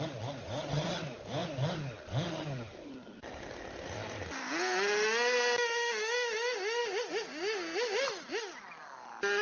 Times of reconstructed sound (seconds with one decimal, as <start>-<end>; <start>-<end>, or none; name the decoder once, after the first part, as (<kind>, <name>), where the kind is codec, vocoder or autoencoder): none